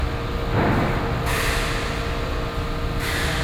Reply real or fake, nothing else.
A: real